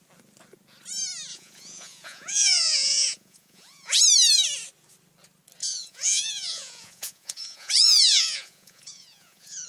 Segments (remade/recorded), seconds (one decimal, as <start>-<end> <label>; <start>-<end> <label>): 0.0-1.3 recorded; 1.3-4.0 remade; 4.0-5.6 recorded; 5.6-9.7 remade